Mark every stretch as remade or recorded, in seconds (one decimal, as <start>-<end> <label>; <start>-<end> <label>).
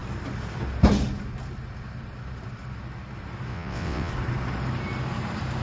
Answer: 0.0-3.5 recorded; 3.5-4.1 remade; 4.1-5.6 recorded